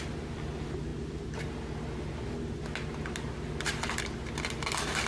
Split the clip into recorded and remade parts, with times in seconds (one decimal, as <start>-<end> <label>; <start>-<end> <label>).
0.0-5.1 recorded